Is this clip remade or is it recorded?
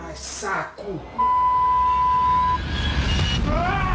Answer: recorded